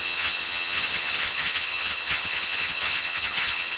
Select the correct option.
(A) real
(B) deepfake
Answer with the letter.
B